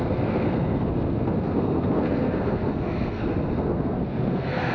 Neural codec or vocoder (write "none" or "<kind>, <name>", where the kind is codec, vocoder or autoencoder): codec, SNAC